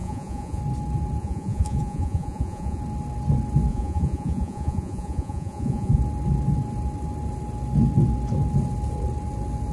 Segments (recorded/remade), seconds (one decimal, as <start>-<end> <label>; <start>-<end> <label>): 0.0-0.6 remade; 0.6-1.2 recorded; 1.2-2.8 remade; 2.8-3.7 recorded; 3.7-6.0 remade; 6.0-9.7 recorded